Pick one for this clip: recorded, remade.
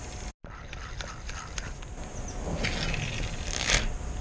recorded